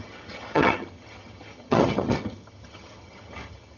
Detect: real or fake fake